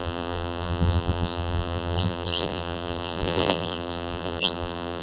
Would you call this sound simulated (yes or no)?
yes